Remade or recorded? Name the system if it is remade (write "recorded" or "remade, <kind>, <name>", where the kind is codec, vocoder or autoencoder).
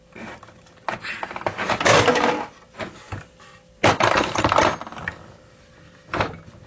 recorded